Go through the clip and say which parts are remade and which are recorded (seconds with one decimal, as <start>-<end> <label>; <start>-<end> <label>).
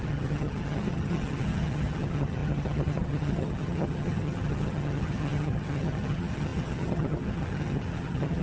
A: 0.0-8.4 remade